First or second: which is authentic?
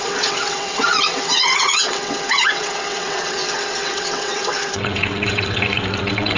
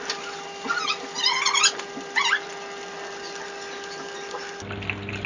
second